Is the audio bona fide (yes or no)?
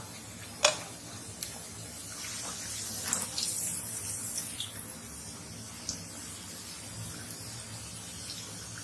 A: yes